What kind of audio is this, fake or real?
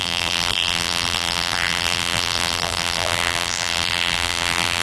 fake